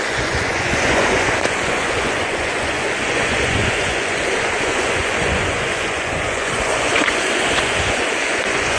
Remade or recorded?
remade